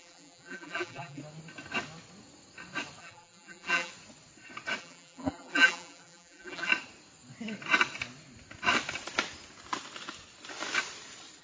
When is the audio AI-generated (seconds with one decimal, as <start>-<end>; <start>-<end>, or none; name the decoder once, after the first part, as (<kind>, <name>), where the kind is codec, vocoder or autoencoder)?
0.0-1.2 (vocoder, BigVGAN v2); 3.0-3.9; 4.8-6.7